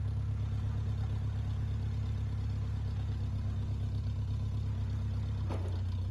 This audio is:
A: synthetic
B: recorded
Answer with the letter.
B